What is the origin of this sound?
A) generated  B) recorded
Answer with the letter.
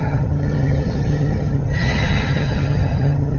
A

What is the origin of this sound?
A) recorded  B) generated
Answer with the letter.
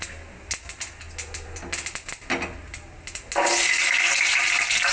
A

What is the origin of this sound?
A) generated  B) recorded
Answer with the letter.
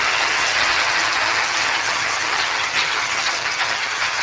A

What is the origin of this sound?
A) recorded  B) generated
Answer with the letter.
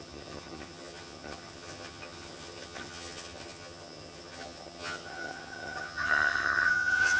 B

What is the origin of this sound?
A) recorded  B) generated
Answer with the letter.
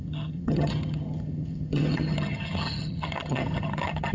B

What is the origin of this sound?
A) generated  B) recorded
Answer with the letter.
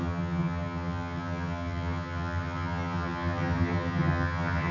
A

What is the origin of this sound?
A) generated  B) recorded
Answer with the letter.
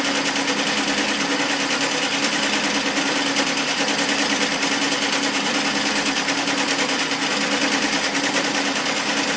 B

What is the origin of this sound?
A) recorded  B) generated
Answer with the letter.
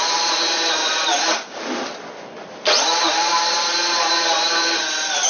A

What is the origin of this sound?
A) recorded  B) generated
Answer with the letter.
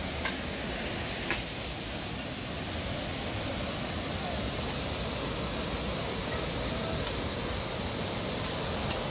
A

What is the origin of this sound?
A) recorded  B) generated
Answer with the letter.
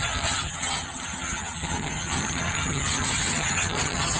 B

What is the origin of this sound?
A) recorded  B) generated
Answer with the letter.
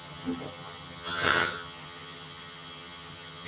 B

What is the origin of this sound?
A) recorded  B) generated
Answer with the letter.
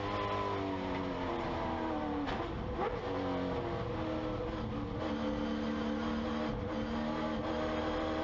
A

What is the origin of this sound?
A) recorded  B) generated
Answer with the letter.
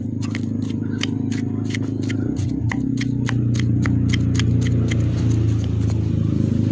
A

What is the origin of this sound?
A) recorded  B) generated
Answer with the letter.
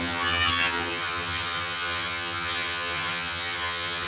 B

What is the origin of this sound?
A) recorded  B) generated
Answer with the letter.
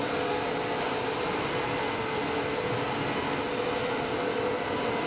A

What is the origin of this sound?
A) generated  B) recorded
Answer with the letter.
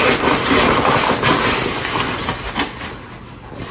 B